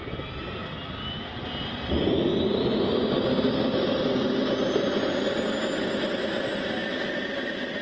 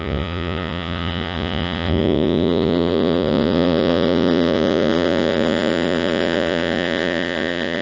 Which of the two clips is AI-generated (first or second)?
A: second